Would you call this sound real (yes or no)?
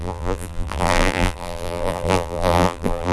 no